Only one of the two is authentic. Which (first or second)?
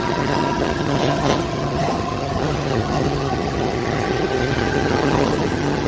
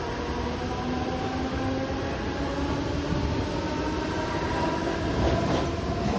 second